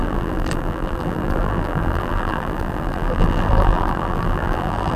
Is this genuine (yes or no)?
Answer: no